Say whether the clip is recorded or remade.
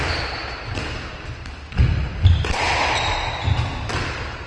recorded